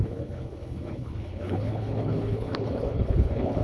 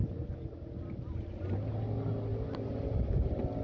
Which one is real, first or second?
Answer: second